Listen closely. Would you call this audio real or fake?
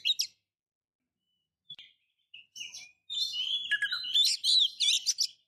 real